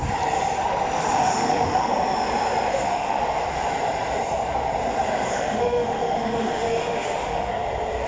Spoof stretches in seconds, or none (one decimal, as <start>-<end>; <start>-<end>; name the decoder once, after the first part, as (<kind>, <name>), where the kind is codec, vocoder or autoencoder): 1.1-1.9 (autoencoder, DAC-VAE); 2.7-3.2; 5.3-7.5